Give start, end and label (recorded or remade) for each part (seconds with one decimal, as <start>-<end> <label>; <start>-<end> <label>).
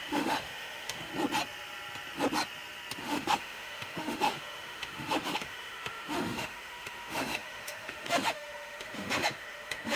0.0-1.1 remade; 1.1-3.0 recorded; 3.0-10.0 remade